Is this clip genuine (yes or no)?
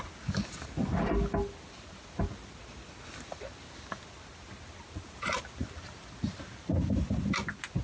yes